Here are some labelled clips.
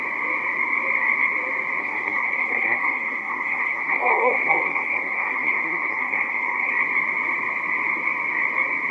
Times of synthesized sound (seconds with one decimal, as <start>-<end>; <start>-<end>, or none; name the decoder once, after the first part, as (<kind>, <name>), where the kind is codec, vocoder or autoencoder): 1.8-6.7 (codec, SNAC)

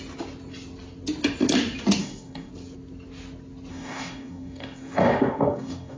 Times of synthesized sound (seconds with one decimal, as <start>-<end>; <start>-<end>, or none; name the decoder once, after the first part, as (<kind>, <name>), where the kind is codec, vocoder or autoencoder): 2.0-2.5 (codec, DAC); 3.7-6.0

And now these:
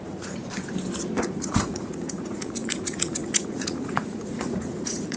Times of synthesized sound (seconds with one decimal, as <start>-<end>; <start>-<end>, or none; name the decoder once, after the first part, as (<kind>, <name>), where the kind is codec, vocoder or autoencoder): 0.0-0.4 (vocoder, Vocos); 1.2-5.2

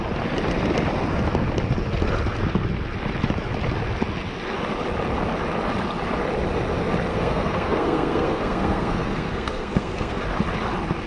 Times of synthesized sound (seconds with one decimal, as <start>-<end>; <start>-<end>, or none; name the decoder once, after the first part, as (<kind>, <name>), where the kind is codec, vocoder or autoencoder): 7.1-10.2 (codec, SNAC)

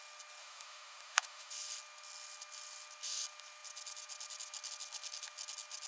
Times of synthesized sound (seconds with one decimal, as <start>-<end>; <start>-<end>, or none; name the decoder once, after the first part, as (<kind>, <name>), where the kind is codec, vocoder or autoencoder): 0.4-1.5 (autoencoder, DAC-VAE)

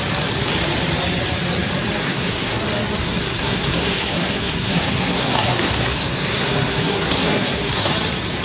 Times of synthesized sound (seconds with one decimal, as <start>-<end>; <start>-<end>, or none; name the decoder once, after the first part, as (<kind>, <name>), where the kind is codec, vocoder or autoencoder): 2.0-2.6 (codec, SNAC); 3.0-7.9